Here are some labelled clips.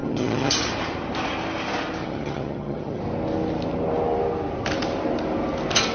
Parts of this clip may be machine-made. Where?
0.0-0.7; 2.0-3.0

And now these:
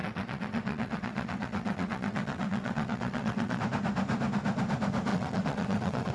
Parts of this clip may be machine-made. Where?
0.0-3.6; 5.1-6.1

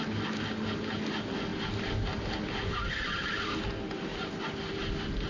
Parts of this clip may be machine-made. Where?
none

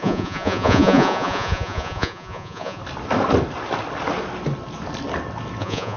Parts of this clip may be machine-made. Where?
0.0-2.8; 5.6-6.0